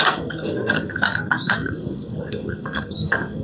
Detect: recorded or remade remade